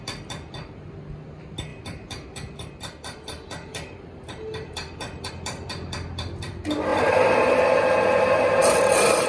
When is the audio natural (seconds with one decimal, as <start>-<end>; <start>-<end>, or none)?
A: 0.0-1.7; 5.3-6.9; 7.6-8.6